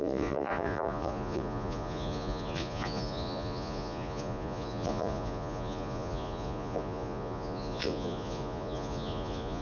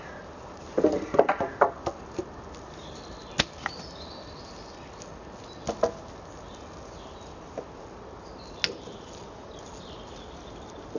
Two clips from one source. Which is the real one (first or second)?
second